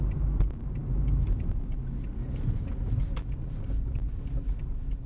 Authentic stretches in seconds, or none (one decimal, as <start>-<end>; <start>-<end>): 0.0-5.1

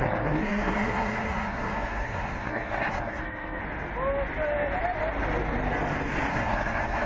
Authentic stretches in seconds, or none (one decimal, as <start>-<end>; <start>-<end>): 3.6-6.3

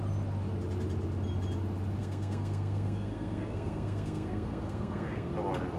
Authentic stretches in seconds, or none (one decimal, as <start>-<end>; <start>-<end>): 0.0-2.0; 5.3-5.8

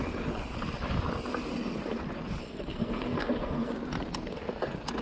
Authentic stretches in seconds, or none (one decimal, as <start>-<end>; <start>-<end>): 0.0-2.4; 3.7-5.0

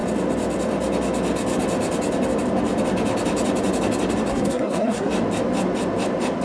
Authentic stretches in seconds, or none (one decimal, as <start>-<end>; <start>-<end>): 0.0-4.3; 5.1-6.4

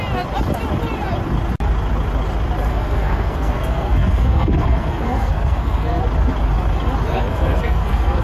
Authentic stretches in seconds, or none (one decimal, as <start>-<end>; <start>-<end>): 0.0-2.7; 6.0-7.1

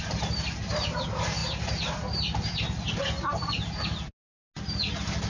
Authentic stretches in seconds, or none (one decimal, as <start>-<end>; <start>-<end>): 0.0-5.3